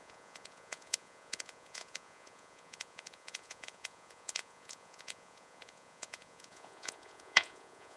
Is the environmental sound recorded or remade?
remade